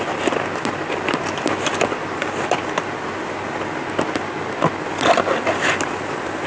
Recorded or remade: recorded